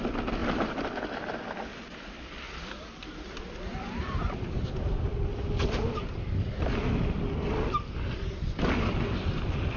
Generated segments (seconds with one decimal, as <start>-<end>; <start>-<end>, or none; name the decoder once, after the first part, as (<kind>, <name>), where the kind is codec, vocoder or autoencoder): none